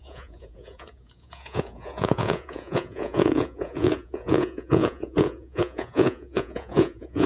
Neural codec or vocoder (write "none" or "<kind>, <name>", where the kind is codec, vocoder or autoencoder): vocoder, Vocos